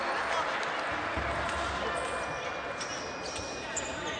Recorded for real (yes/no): yes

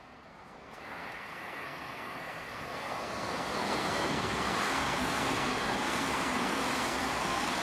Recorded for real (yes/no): no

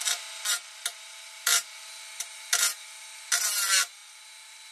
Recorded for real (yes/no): yes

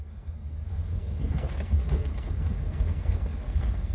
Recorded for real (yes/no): no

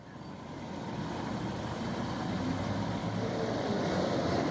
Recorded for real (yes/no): yes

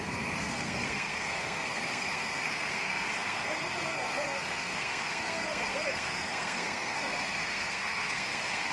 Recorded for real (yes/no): no